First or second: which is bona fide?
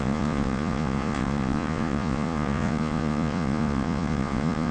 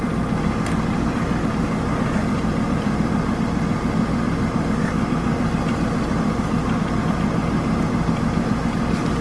second